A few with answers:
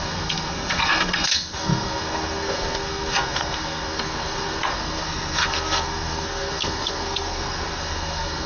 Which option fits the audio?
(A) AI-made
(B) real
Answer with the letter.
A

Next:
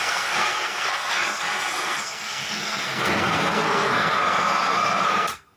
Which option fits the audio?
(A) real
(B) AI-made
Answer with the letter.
B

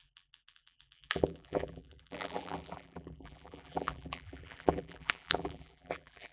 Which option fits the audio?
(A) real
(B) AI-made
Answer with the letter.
B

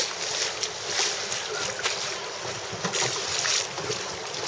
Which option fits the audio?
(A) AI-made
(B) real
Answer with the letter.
B